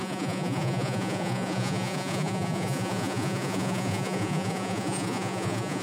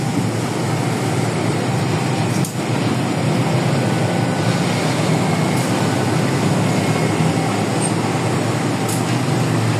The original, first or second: second